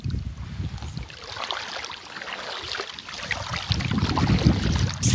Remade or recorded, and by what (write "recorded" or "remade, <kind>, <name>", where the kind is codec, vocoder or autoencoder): recorded